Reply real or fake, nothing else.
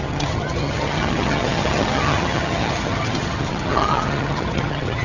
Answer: fake